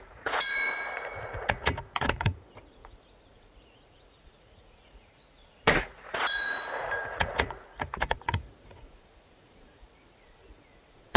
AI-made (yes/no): yes